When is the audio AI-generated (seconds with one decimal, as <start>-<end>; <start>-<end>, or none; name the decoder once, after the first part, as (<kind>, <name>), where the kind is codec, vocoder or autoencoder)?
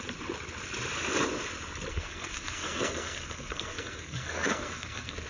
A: 1.9-5.3 (codec, SNAC)